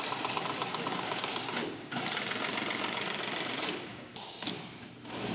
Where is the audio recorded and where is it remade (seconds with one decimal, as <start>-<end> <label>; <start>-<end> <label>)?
0.0-0.7 recorded; 0.7-2.1 remade; 2.1-3.9 recorded; 3.9-4.5 remade; 4.5-5.3 recorded